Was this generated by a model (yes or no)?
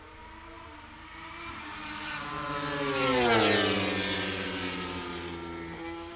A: no